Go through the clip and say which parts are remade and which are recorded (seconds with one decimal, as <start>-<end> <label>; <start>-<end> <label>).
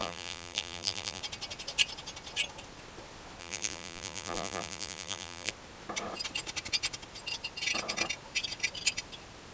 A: 0.0-1.2 remade; 1.2-3.4 recorded; 3.4-5.5 remade; 5.5-9.5 recorded